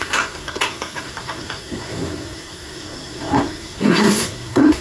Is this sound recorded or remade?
remade